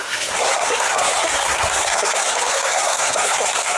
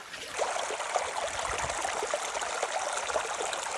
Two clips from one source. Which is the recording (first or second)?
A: second